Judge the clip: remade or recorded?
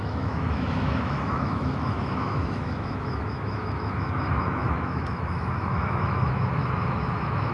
remade